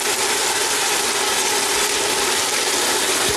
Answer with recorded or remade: recorded